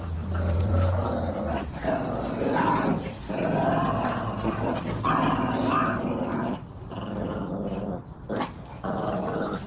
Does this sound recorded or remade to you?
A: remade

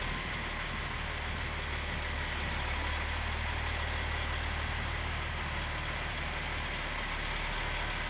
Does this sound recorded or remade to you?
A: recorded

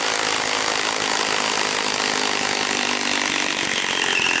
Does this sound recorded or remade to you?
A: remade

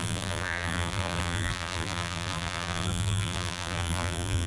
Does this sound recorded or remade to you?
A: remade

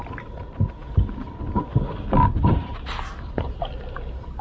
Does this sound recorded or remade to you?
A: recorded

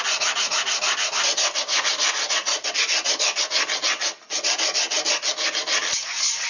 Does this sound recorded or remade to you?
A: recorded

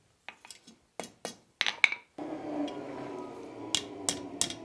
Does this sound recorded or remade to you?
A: recorded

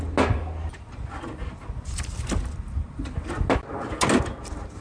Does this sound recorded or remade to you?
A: recorded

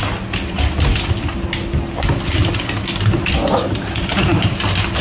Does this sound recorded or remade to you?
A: recorded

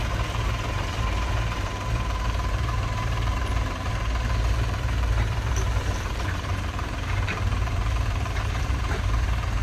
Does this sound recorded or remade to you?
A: remade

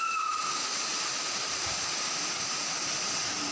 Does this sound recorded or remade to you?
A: recorded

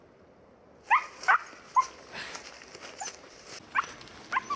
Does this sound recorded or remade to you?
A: recorded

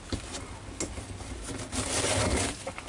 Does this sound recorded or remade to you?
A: recorded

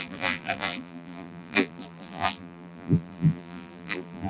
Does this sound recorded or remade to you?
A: remade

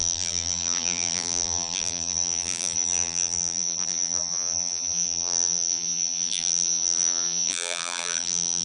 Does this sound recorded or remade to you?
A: remade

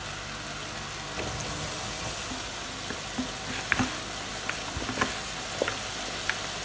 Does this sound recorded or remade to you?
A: recorded